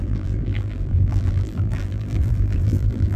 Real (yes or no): no